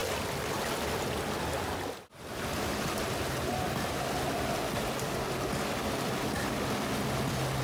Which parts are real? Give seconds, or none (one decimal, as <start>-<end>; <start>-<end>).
0.0-7.6

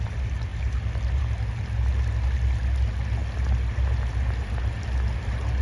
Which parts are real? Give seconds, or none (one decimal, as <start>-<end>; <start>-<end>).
0.0-5.6

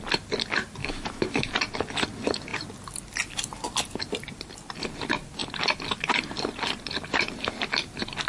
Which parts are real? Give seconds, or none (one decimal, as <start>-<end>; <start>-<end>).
0.0-0.8; 1.5-8.3

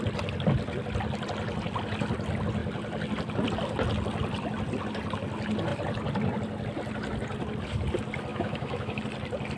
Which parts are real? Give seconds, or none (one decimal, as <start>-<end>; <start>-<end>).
0.0-8.3; 9.0-9.6

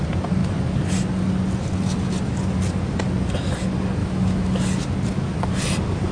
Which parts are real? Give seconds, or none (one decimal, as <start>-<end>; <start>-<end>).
0.0-4.0; 4.6-6.1

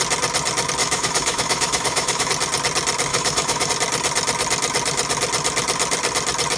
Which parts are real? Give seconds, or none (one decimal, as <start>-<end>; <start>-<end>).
0.0-0.8; 2.3-3.1; 3.7-6.6

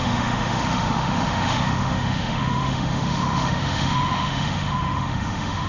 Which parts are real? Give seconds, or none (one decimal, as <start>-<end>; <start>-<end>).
none

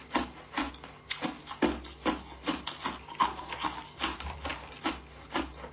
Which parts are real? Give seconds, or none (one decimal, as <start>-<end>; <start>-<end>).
0.0-5.7